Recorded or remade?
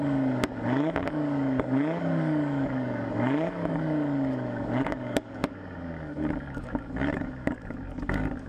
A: remade